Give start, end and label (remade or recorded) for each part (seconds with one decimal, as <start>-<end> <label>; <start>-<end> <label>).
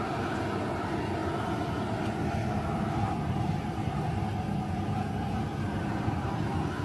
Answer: 0.0-6.8 recorded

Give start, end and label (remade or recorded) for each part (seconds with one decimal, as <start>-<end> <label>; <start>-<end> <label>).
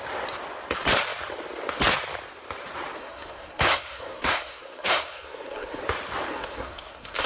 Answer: 0.0-3.0 recorded; 3.0-5.8 remade; 5.8-6.3 recorded; 6.3-7.3 remade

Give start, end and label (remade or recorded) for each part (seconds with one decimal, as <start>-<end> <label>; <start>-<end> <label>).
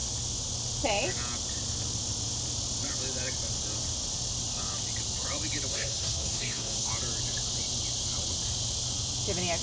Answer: 0.0-5.7 recorded; 5.7-6.9 remade; 6.9-9.6 recorded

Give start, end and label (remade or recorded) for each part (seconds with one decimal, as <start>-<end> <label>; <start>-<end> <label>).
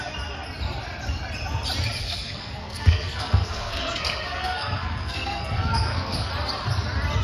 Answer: 0.0-2.0 recorded; 2.0-6.3 remade; 6.3-7.2 recorded